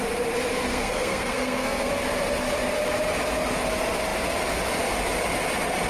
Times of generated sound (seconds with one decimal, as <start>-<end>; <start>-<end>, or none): 0.7-1.9